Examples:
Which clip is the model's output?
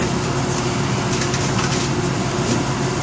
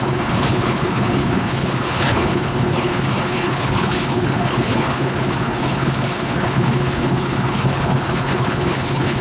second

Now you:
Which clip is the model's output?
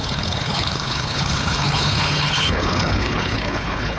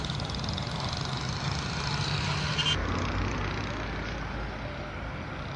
first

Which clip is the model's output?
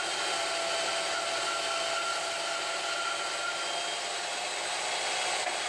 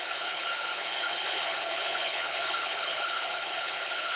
second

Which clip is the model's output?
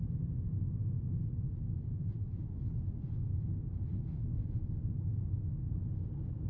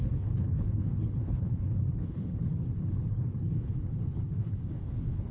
second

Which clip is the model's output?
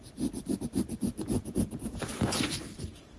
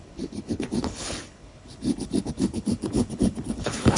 second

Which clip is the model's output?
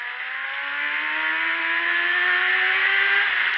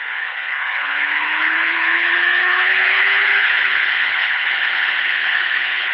second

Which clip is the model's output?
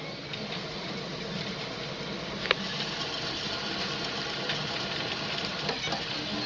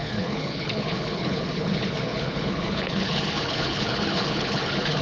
second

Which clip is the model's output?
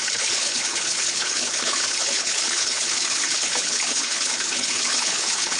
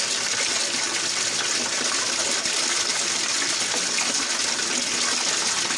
first